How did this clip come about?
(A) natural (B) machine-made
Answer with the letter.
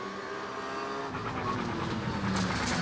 A